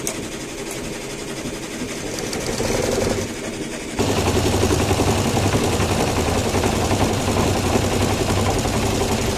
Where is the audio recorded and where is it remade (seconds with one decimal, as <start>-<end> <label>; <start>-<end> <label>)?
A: 0.0-1.2 recorded; 1.2-2.6 remade; 2.6-3.7 recorded; 3.7-4.5 remade; 4.5-9.4 recorded